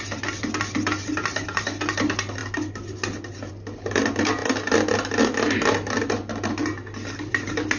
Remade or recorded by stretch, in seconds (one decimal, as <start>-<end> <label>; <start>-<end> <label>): 0.0-7.8 recorded